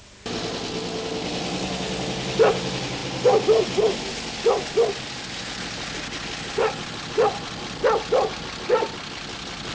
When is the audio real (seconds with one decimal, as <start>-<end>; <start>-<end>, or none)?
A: 0.0-9.7